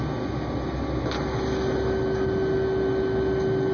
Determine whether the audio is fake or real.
real